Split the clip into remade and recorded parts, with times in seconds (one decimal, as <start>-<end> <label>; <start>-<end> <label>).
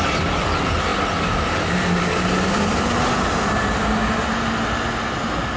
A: 0.0-5.6 recorded